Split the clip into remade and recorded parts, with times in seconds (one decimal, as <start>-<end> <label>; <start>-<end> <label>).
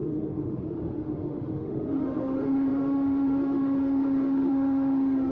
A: 0.0-5.3 remade